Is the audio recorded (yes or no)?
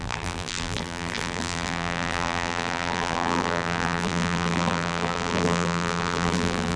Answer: no